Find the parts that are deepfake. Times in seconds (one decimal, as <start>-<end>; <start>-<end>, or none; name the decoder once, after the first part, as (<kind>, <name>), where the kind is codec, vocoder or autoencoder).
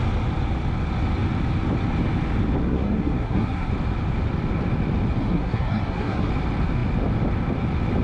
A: 2.6-3.7 (codec, SNAC); 5.2-6.3